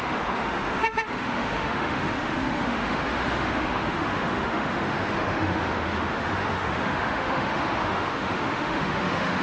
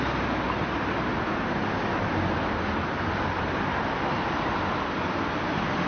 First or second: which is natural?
second